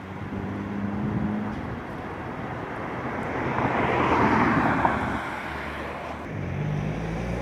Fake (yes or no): no